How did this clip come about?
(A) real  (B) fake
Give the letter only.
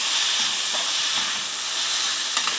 A